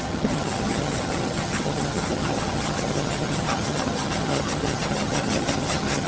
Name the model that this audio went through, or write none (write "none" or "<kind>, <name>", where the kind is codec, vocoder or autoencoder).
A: vocoder, HiFi-GAN